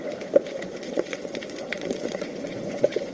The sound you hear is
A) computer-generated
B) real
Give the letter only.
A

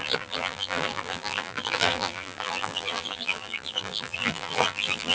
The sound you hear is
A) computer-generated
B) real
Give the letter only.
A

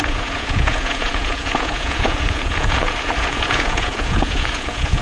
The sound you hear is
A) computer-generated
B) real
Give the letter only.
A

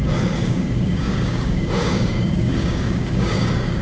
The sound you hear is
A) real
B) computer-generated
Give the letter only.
B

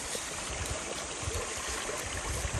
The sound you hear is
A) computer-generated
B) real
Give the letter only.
B